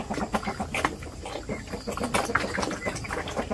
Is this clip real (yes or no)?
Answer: yes